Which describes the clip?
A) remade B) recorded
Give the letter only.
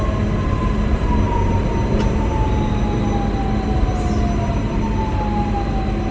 B